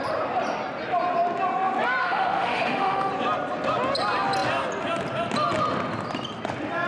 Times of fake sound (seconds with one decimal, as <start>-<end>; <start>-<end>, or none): 2.0-3.1